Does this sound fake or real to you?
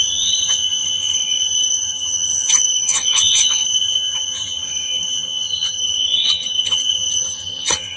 fake